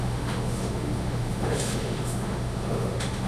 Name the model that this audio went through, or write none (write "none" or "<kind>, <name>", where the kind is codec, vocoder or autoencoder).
autoencoder, DAC-VAE